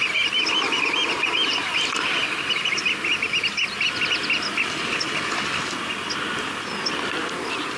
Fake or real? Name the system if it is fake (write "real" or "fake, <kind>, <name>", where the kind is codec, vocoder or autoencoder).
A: real